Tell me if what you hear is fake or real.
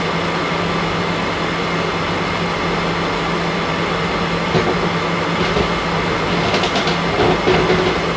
real